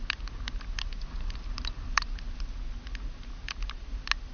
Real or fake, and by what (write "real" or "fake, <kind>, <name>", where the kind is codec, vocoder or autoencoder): real